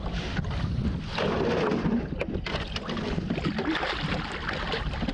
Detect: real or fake real